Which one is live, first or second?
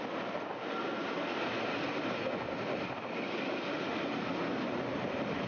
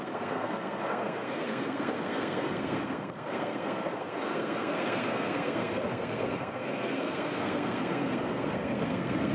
first